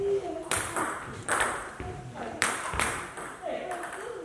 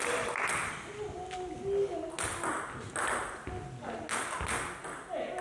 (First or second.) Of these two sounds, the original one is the second